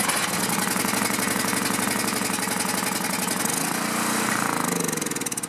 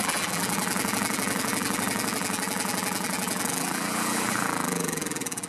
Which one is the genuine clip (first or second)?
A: first